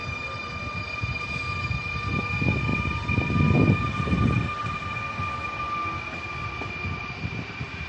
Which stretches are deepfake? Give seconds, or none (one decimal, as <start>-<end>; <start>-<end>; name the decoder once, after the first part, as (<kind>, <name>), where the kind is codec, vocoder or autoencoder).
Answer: none